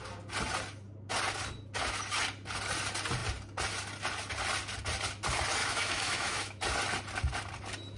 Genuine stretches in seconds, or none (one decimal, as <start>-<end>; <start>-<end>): 0.0-5.6; 6.6-8.0

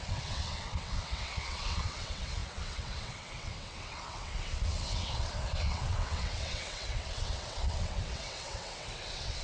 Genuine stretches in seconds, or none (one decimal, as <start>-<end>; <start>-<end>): none

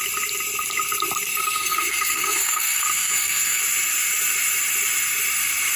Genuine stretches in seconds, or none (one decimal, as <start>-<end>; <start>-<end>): 0.0-1.3; 3.6-5.8

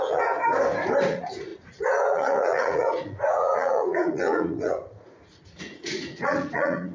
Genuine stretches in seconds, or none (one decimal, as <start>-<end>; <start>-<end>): 0.4-1.1

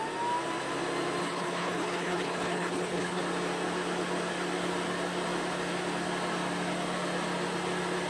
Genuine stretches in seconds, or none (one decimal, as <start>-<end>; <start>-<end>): 0.0-1.2; 3.2-8.1

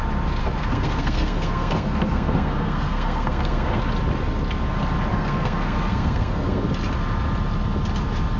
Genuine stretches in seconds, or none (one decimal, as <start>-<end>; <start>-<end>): 0.0-0.4; 3.8-5.1; 6.6-8.4